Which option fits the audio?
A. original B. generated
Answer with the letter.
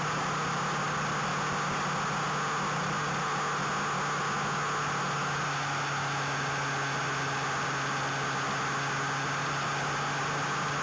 A